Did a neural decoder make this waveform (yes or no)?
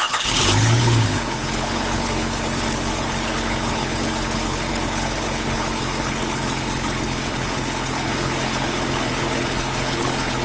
yes